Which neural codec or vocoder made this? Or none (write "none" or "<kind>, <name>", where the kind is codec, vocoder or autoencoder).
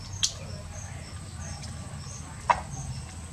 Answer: none